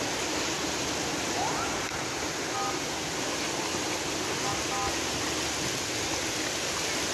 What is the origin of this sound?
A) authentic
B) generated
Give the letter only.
A